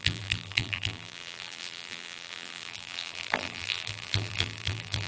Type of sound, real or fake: fake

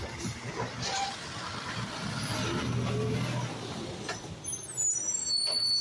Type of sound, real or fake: real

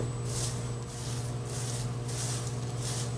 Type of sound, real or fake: real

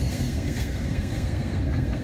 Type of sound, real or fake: fake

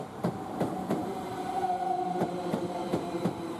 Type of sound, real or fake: fake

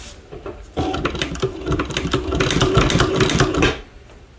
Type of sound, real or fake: real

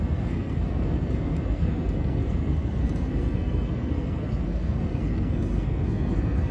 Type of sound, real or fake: fake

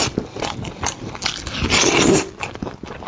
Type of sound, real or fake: real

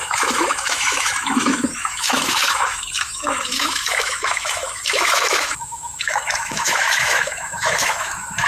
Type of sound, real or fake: fake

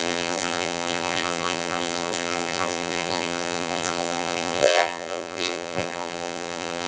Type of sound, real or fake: fake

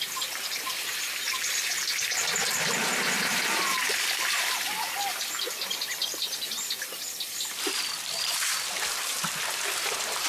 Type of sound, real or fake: fake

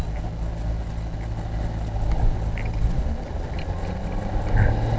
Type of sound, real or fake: real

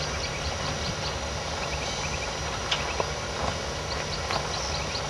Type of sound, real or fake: real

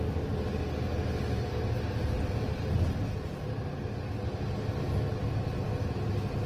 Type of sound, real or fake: real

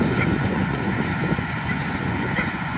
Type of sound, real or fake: fake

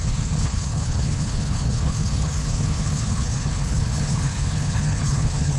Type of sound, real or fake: fake